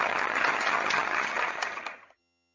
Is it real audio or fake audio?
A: fake